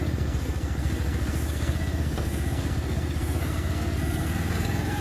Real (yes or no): no